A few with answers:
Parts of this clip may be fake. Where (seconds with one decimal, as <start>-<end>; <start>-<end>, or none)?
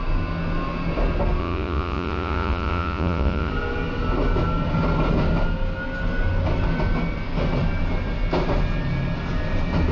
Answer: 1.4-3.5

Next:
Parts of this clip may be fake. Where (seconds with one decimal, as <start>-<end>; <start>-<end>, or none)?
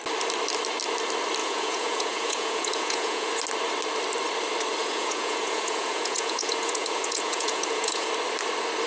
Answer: 1.4-3.3; 4.8-8.1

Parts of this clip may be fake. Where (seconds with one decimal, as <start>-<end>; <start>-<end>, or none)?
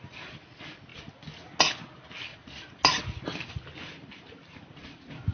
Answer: 2.3-3.0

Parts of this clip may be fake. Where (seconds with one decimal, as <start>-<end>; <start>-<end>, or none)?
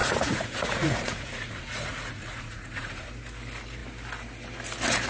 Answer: 0.0-3.1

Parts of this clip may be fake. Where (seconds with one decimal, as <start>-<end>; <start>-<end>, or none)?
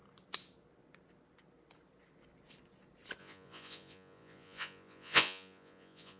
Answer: 3.2-6.2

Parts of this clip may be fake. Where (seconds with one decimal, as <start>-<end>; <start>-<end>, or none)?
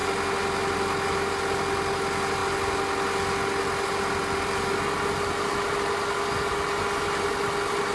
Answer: none